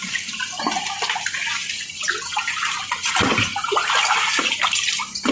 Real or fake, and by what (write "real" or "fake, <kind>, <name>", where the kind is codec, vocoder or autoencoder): real